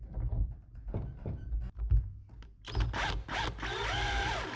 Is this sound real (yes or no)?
yes